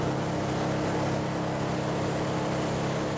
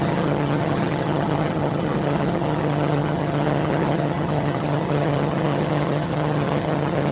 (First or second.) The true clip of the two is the first